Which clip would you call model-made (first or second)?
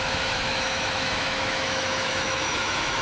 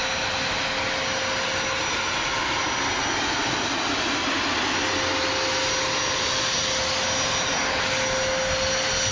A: first